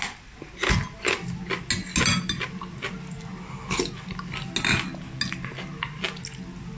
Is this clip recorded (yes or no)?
yes